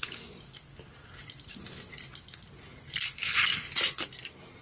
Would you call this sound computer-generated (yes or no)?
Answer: no